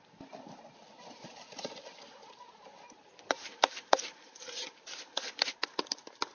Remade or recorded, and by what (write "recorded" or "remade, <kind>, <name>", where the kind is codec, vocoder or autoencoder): recorded